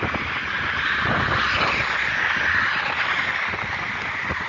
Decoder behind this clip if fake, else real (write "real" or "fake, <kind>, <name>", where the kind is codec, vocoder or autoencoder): real